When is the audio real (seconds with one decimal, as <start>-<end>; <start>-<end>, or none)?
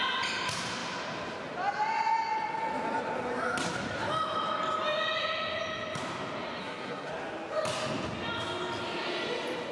0.0-6.6; 7.1-9.7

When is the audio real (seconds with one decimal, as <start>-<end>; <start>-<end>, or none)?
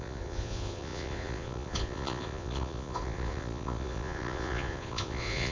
none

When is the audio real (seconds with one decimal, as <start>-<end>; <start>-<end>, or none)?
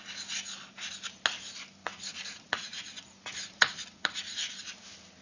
0.0-1.8; 4.2-5.2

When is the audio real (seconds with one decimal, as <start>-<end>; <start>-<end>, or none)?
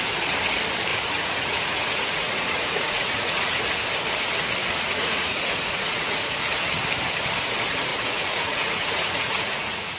0.0-0.9; 3.6-4.6; 6.3-7.9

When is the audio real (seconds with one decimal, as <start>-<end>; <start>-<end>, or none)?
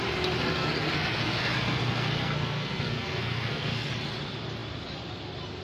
0.0-0.5; 3.9-5.6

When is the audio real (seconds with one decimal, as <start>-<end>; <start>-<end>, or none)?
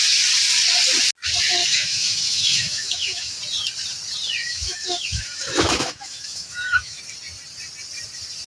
0.0-1.6; 3.4-4.4; 7.0-8.5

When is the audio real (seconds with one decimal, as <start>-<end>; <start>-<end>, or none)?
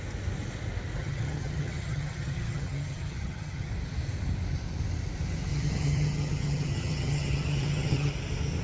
0.0-1.0; 3.7-5.5; 8.1-8.6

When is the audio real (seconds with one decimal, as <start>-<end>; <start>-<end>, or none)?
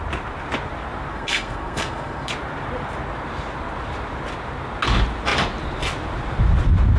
0.0-1.1; 2.3-7.0